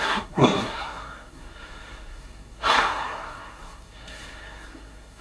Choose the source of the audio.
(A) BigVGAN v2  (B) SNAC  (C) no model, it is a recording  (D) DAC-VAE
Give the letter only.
B